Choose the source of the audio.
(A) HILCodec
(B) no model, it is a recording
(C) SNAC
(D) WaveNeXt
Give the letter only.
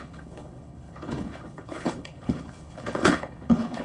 A